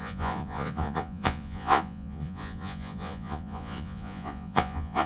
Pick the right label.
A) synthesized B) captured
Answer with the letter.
A